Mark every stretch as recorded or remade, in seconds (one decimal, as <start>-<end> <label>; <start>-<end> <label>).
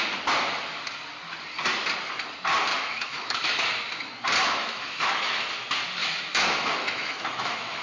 0.0-2.7 recorded; 2.7-3.6 remade; 3.6-4.6 recorded; 4.6-5.5 remade; 5.5-6.0 recorded; 6.0-7.8 remade